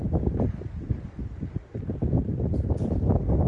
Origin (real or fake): real